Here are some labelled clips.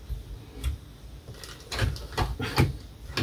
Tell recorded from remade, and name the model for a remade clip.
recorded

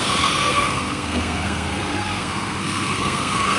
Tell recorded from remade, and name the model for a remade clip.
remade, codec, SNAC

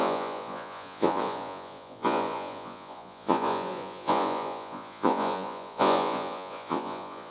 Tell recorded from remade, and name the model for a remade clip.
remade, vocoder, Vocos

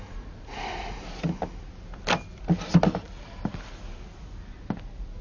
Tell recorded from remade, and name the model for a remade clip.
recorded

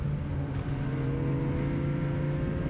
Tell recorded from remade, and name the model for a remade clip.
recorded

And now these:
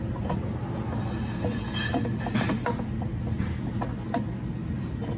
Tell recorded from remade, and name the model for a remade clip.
recorded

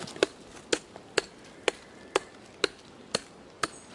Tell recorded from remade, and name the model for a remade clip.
recorded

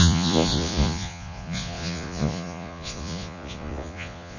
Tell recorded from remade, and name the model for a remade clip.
remade, vocoder, Vocos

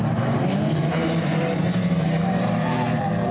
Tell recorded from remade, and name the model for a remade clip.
remade, vocoder, BigVGAN v2